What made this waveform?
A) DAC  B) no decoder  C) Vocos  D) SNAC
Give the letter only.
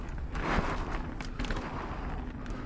B